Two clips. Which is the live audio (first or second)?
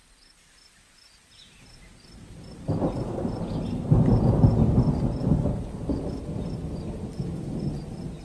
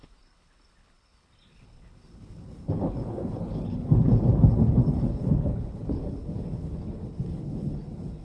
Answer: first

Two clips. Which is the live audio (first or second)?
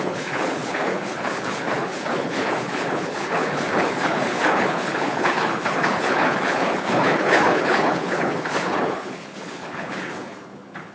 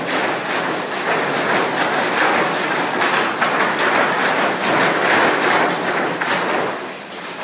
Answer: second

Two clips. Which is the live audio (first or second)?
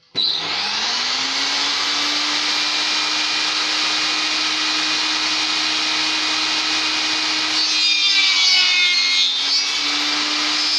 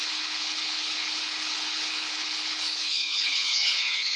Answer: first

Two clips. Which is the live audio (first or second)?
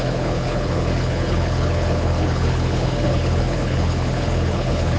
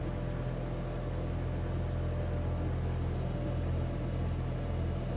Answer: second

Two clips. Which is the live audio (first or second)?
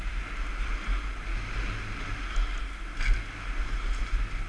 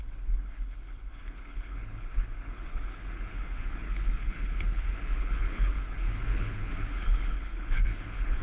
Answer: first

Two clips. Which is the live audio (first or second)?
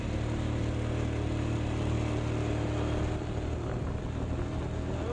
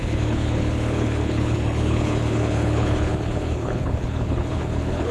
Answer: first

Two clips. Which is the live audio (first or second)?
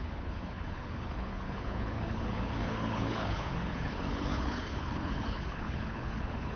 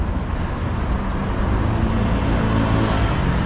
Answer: second